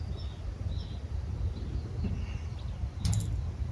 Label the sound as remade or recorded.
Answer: recorded